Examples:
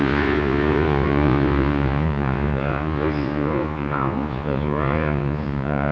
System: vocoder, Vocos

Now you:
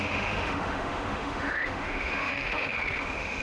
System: autoencoder, DAC-VAE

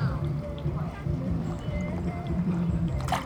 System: vocoder, BigVGAN v2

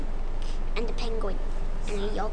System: none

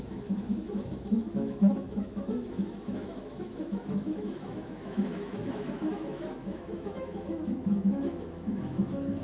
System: autoencoder, DAC-VAE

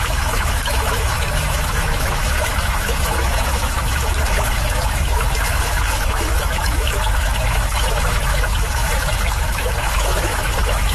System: autoencoder, DAC-VAE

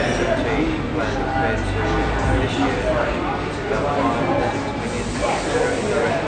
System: none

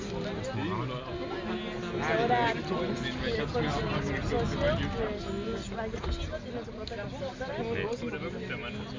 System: none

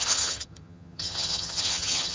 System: vocoder, HiFi-GAN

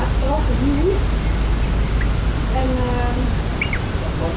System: none